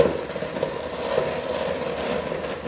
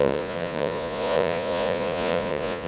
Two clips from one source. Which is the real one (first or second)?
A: first